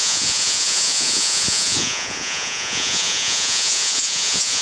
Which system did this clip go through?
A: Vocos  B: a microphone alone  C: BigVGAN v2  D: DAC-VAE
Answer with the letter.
A